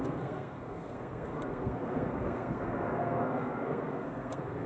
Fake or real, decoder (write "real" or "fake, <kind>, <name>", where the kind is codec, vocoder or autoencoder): fake, codec, SNAC